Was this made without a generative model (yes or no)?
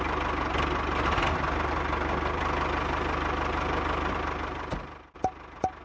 yes